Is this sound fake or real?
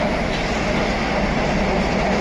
real